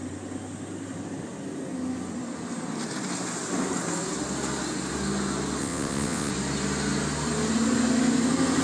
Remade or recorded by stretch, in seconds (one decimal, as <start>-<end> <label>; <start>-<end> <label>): 0.0-5.6 recorded; 5.6-6.3 remade; 6.3-8.6 recorded